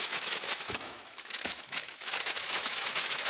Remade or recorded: remade